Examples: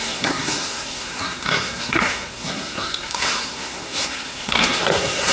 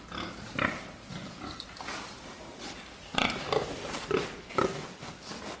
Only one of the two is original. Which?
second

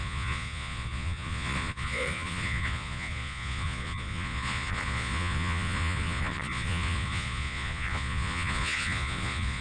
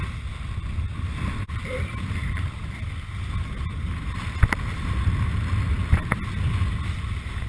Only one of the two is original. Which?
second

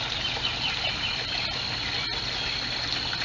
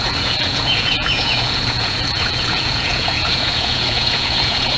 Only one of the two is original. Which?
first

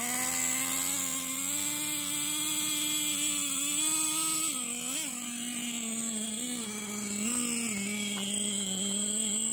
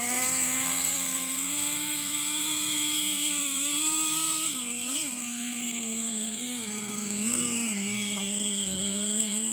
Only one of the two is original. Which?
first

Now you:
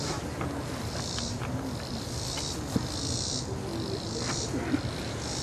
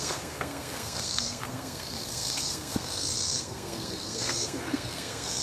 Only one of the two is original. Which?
first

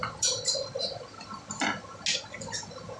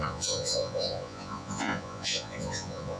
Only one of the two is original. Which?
first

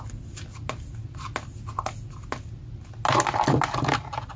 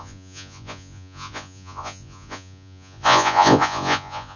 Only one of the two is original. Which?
first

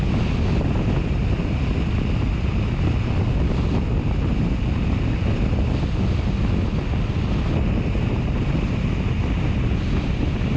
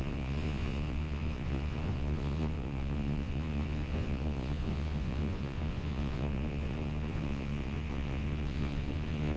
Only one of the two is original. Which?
first